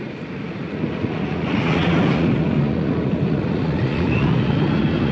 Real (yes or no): no